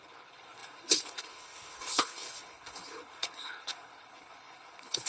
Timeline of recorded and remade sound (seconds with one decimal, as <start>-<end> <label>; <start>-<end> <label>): 0.0-5.1 remade